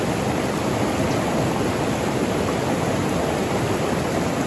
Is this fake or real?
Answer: real